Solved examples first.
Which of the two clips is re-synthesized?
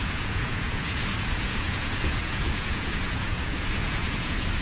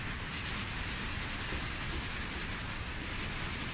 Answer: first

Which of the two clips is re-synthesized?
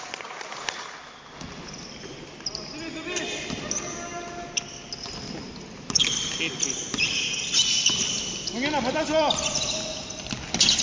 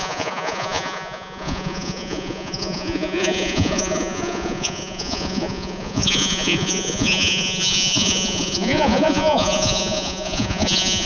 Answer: second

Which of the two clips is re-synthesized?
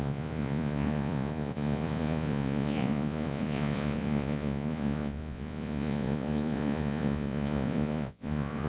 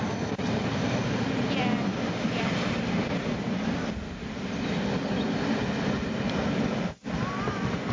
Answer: first